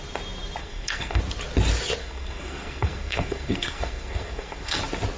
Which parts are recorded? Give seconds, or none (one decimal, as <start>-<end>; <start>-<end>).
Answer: 0.0-0.6; 1.2-2.0; 4.8-5.2